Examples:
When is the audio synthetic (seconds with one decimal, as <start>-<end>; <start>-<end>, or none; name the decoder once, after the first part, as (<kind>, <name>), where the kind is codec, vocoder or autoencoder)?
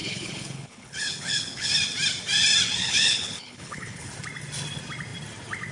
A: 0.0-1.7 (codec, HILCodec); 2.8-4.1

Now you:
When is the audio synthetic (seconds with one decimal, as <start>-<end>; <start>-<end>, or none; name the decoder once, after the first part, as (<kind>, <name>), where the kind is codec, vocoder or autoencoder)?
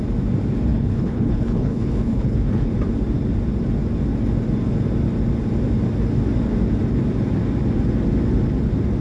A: 0.7-2.7 (codec, HILCodec)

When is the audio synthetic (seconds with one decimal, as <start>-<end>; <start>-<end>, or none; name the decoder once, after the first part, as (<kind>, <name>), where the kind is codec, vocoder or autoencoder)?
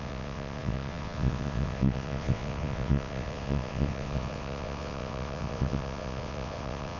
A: 0.0-7.0 (vocoder, WaveNeXt)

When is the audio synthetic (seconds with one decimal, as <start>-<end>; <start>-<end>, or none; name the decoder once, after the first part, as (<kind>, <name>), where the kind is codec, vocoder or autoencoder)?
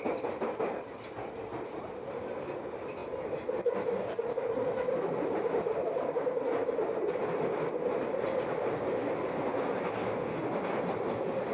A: none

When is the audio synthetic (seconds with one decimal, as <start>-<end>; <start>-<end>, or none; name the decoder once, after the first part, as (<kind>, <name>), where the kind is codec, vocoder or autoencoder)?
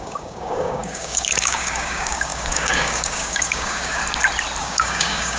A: 0.0-4.0 (codec, DAC); 4.6-5.4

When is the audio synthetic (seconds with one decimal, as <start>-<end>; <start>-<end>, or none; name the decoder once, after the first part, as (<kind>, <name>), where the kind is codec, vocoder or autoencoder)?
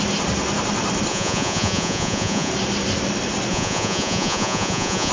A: 1.1-2.5 (vocoder, Vocos); 3.5-5.1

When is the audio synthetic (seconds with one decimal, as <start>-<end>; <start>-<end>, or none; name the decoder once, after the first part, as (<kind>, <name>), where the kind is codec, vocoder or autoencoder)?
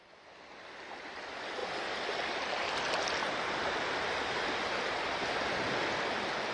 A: 1.6-2.2 (vocoder, BigVGAN v2)